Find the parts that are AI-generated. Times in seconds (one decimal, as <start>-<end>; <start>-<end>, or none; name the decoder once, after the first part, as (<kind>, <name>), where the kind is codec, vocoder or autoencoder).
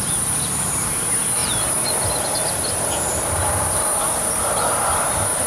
none